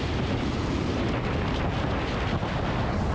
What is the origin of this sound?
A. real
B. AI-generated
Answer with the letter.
A